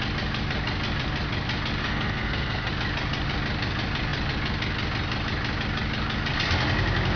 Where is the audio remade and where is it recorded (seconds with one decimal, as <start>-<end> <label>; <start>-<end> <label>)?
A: 0.0-1.8 recorded; 1.8-2.7 remade; 2.7-7.2 recorded